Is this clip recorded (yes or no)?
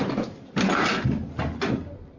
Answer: yes